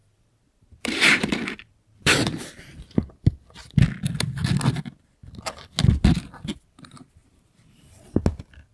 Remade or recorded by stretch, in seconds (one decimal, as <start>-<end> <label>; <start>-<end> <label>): 0.0-2.9 remade; 2.9-7.2 recorded; 7.2-8.2 remade; 8.2-8.7 recorded